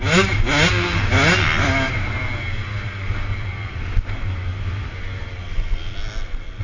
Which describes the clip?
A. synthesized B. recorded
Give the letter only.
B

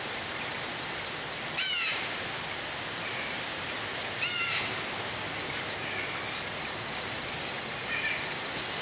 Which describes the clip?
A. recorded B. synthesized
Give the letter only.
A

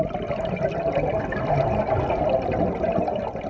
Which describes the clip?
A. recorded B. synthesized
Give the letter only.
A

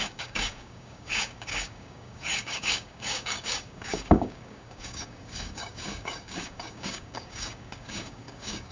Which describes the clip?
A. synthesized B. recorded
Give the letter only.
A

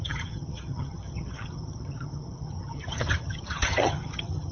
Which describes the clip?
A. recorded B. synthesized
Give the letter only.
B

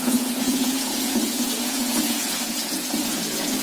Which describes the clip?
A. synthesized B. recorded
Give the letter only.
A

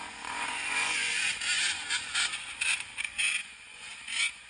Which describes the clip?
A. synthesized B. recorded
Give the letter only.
A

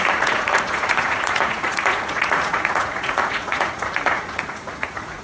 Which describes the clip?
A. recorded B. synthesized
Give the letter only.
B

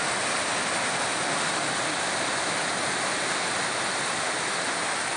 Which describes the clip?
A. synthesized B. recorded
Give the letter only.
B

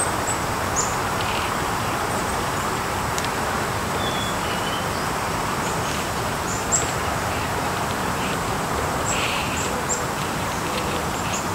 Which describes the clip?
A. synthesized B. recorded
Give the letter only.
A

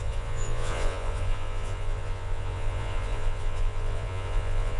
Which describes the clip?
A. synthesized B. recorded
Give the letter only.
A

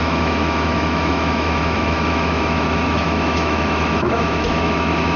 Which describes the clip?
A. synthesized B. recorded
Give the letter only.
A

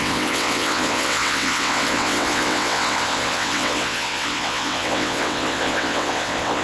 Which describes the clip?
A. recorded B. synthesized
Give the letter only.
B